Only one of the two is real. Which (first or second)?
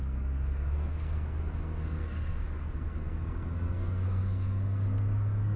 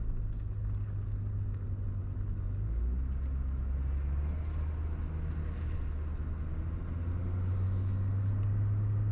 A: second